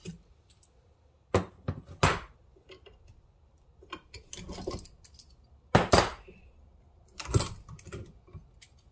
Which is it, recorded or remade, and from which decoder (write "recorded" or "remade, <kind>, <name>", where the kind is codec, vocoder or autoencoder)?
recorded